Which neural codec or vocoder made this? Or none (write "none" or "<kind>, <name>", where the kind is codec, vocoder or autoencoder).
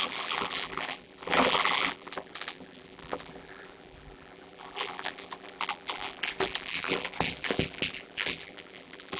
vocoder, BigVGAN v2